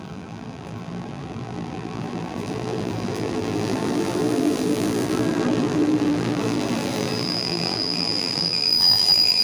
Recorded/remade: remade